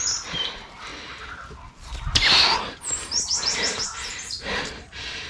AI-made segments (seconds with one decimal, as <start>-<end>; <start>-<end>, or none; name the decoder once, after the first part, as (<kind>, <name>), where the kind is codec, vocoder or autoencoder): 0.0-0.9 (vocoder, BigVGAN v2); 4.1-5.3